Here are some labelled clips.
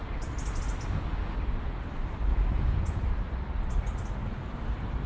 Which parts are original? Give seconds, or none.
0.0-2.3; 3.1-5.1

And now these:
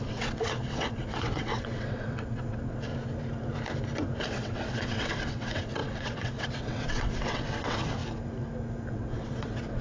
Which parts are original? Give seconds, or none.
2.9-4.2; 8.0-8.9

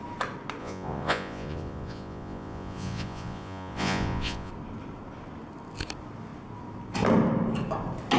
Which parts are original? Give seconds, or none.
0.0-0.6; 4.5-8.2

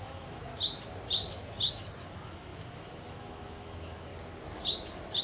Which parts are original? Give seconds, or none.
0.5-1.7; 4.1-5.2

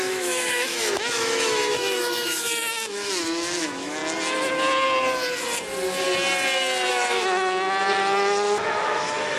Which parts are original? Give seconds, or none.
4.0-6.9

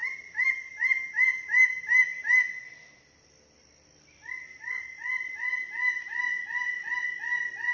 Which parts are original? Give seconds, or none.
1.1-7.7

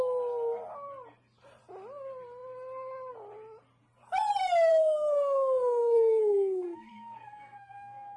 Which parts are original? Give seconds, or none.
0.0-4.7

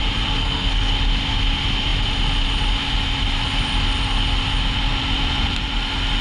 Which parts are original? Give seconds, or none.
0.0-0.4; 0.9-6.2